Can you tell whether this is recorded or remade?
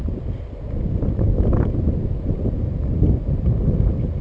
recorded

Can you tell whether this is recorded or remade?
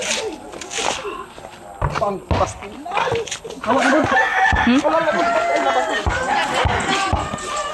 recorded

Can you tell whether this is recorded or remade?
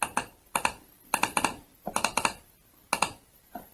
recorded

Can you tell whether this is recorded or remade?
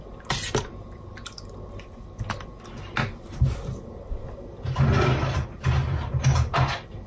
recorded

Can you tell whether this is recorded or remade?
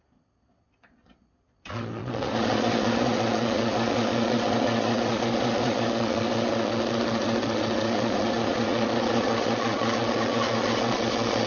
remade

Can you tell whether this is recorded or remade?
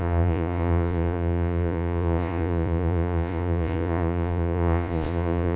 remade